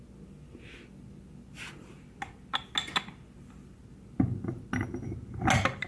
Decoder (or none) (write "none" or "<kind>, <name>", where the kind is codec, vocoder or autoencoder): none